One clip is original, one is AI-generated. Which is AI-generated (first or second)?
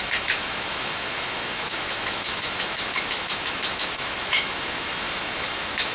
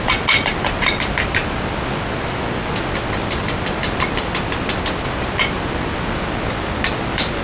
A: first